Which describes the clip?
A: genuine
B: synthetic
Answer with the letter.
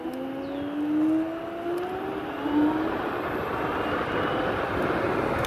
A